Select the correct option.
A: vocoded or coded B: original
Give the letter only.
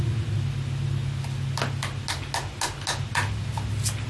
B